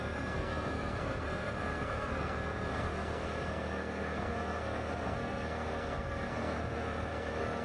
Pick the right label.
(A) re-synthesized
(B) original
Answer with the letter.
A